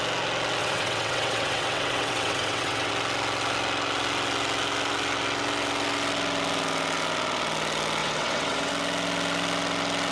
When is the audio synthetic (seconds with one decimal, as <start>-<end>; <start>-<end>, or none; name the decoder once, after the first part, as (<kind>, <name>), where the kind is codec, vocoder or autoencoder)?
0.6-2.9 (vocoder, WaveNeXt); 8.0-8.7